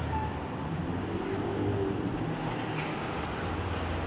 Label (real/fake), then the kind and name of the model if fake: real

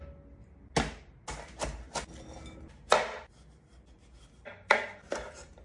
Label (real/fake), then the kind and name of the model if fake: real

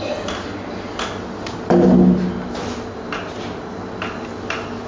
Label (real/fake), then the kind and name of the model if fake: real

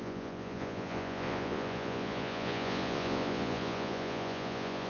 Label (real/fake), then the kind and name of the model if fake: fake, vocoder, Vocos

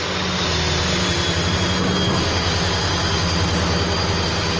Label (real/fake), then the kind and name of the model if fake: real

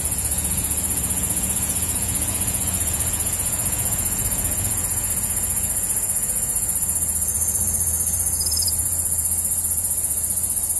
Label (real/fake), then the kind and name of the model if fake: fake, vocoder, Vocos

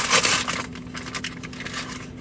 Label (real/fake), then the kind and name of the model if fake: real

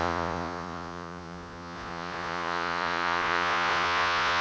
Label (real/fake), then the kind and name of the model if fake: fake, vocoder, Vocos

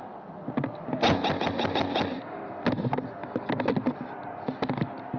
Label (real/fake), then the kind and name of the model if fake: real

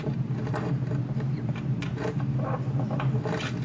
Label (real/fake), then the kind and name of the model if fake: real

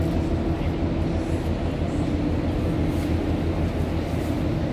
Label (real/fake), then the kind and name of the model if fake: real